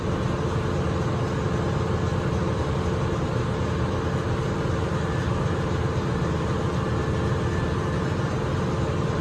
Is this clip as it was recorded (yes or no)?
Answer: yes